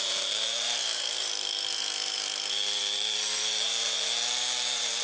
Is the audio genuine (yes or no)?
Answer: no